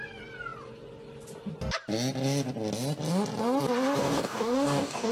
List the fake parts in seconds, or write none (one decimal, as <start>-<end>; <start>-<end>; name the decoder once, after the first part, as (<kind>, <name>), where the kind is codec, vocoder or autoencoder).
4.0-5.1 (codec, DAC)